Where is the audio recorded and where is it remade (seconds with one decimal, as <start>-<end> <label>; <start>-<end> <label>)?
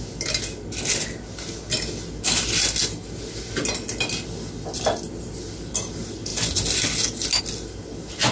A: 0.0-8.3 recorded